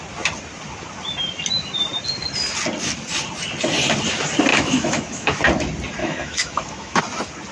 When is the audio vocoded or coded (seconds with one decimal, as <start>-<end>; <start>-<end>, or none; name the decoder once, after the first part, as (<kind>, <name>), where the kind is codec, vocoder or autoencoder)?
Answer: 4.5-5.4 (autoencoder, DAC-VAE); 6.0-7.0